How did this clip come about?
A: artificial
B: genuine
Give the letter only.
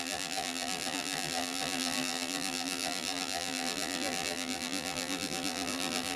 A